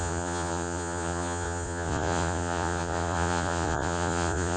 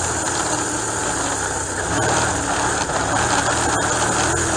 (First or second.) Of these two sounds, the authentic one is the second